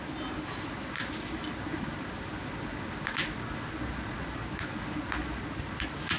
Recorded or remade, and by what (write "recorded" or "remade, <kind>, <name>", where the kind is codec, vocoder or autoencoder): recorded